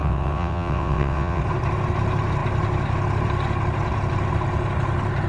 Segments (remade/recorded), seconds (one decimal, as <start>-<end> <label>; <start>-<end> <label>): 0.0-1.4 remade; 1.4-5.3 recorded